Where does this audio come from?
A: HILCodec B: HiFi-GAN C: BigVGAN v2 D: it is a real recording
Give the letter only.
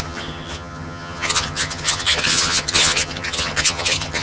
B